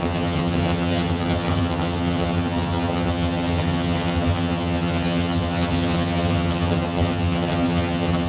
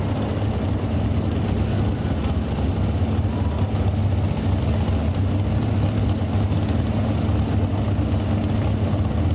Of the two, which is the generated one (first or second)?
first